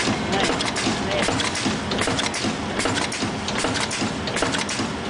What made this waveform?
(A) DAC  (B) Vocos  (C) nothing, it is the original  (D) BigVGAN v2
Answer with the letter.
C